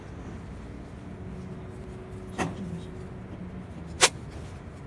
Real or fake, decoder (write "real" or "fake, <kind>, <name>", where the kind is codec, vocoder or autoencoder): real